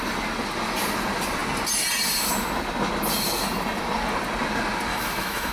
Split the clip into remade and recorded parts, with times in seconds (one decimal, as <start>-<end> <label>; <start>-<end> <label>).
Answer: 0.0-4.9 recorded; 4.9-5.5 remade